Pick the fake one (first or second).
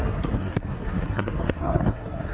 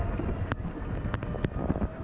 first